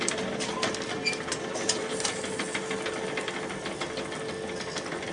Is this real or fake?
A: real